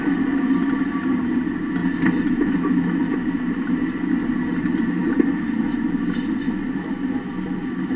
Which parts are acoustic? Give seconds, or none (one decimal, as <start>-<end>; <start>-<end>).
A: 0.0-8.0